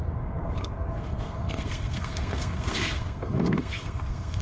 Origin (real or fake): fake